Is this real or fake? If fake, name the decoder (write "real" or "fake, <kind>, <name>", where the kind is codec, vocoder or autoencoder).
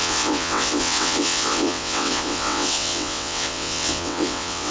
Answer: fake, vocoder, WaveNeXt